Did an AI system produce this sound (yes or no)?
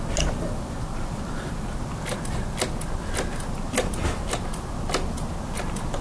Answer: no